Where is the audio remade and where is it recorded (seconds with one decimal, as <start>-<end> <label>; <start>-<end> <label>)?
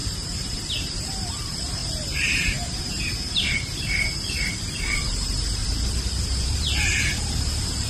0.0-5.6 remade; 5.6-6.2 recorded; 6.2-7.9 remade